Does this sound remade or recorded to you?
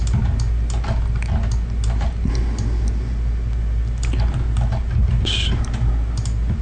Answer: recorded